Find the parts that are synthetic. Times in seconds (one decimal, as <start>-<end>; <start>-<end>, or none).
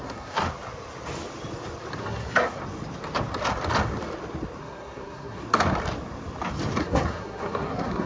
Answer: 0.0-0.4; 2.0-2.6; 4.6-5.4; 6.8-8.1